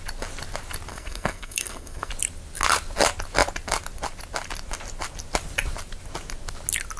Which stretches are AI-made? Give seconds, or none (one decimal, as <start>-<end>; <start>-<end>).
0.9-2.1